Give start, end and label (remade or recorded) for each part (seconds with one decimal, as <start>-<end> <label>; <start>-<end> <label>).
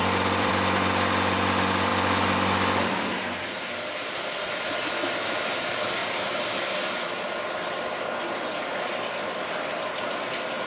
0.0-0.5 remade; 0.5-10.7 recorded